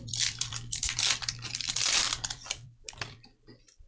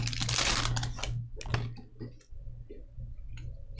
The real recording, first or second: second